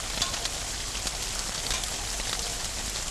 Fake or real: real